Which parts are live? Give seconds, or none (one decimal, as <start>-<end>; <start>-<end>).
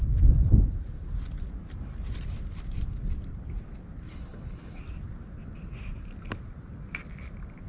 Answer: 0.0-4.1; 4.8-7.7